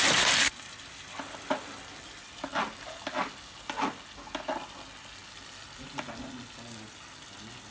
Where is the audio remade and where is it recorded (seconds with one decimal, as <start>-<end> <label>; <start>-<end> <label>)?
0.0-7.7 recorded